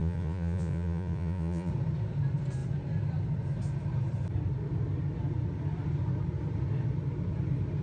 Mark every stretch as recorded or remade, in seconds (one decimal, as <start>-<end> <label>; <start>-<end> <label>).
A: 0.0-1.7 remade; 1.7-7.8 recorded